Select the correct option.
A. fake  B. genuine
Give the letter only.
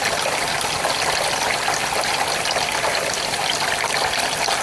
B